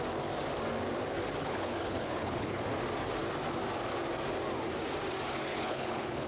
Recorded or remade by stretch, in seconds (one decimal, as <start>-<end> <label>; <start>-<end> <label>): 0.0-1.4 recorded; 1.4-2.6 remade; 2.6-5.5 recorded; 5.5-6.3 remade

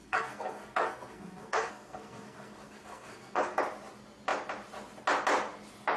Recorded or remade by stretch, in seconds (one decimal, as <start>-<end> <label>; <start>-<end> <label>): 0.0-3.6 remade; 3.6-6.0 recorded

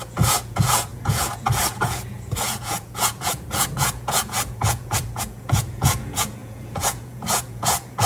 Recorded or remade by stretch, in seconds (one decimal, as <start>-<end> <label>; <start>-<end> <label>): 0.0-8.1 remade

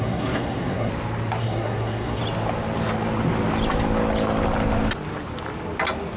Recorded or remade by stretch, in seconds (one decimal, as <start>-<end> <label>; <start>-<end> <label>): 0.0-0.9 remade; 0.9-1.4 recorded; 1.4-2.2 remade; 2.2-6.2 recorded